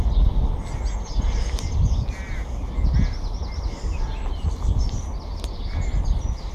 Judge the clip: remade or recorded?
recorded